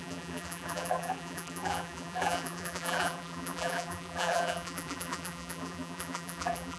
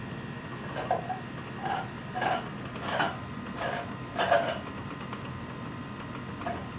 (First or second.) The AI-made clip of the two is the first